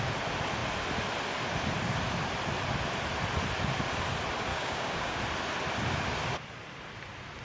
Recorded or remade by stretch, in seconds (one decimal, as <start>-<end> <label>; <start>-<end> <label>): 0.0-4.5 recorded; 4.5-5.2 remade; 5.2-7.4 recorded